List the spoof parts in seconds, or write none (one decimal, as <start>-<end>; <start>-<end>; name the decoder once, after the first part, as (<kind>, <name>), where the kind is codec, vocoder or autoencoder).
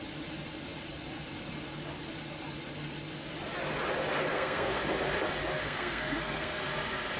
4.3-4.8 (codec, SNAC); 5.6-6.6